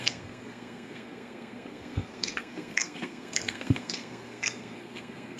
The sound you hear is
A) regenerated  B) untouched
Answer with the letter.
A